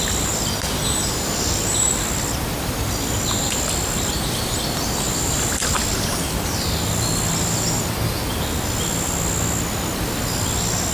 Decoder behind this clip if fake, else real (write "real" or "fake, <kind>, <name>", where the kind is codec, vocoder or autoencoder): real